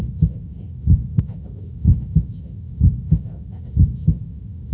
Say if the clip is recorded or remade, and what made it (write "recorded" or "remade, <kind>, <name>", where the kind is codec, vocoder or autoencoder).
remade, autoencoder, DAC-VAE